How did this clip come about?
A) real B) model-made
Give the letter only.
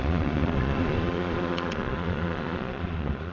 B